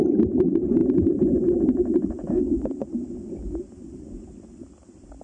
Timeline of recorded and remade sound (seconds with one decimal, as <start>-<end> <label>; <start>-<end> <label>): 0.0-5.2 recorded